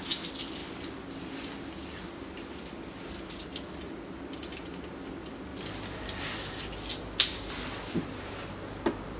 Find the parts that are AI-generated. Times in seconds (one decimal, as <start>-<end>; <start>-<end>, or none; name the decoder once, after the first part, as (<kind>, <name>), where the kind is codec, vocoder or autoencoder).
none